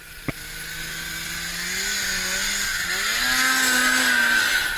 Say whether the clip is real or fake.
real